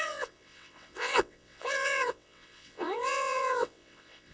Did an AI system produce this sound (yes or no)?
yes